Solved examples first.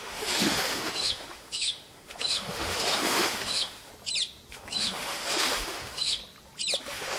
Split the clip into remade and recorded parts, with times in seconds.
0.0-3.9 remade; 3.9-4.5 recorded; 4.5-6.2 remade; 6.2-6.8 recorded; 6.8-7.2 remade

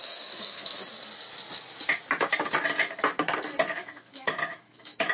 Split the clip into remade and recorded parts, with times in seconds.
0.0-0.6 remade; 0.6-3.7 recorded; 3.7-5.1 remade

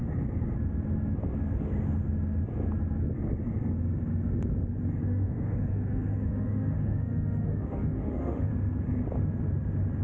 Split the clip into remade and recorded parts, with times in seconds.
0.0-5.0 recorded; 5.0-8.5 remade; 8.5-10.0 recorded

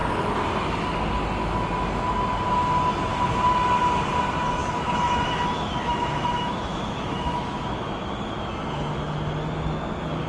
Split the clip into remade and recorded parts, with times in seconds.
0.0-4.6 recorded; 4.6-8.5 remade; 8.5-10.3 recorded

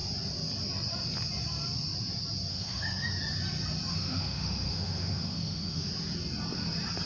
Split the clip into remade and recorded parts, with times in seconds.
0.0-2.5 recorded; 2.5-3.1 remade; 3.1-3.9 recorded; 3.9-5.9 remade; 5.9-7.1 recorded

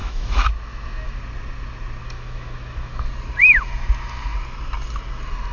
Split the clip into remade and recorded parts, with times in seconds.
0.0-1.2 remade; 1.2-2.0 recorded; 2.0-3.1 remade; 3.1-5.5 recorded